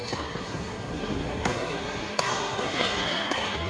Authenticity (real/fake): fake